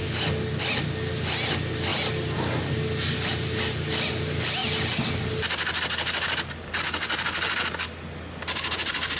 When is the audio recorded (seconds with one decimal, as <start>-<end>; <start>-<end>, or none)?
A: 0.0-9.2